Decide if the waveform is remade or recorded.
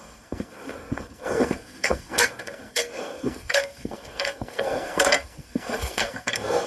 remade